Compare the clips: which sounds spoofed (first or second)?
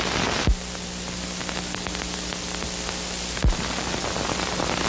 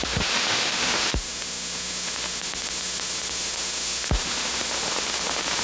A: second